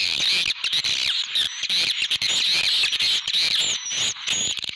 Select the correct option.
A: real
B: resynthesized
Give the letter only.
A